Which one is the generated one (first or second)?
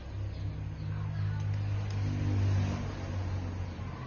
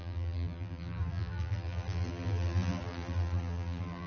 second